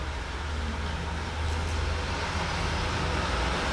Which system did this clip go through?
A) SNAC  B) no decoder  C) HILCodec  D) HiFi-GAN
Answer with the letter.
B